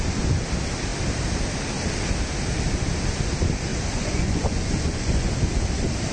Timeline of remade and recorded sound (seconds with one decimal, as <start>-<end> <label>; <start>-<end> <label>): 0.0-3.7 recorded; 3.7-5.3 remade; 5.3-6.1 recorded